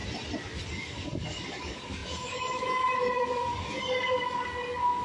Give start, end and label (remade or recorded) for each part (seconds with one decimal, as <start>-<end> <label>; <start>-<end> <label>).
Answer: 0.0-0.7 recorded; 0.7-5.0 remade